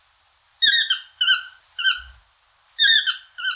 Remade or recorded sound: recorded